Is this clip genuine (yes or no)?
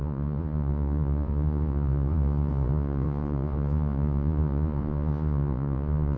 no